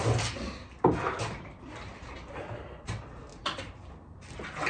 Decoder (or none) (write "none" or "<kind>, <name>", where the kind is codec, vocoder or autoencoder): none